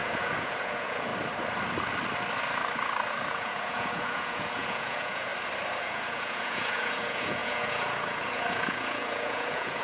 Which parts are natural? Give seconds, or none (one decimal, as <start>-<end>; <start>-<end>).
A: 1.1-3.3; 5.3-5.8